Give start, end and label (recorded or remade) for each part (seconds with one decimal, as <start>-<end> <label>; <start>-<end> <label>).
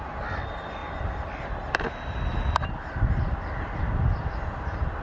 0.0-5.0 recorded